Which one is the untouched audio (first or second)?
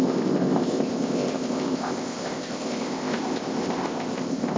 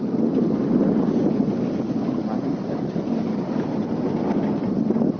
second